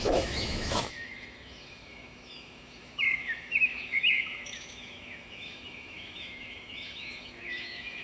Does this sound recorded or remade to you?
remade